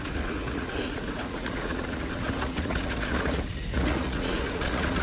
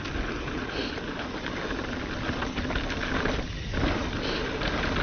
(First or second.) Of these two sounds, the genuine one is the second